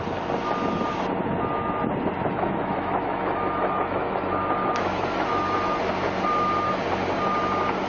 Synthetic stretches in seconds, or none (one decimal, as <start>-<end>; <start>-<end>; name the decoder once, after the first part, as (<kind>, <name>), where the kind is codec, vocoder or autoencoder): 2.2-5.8 (autoencoder, DAC-VAE)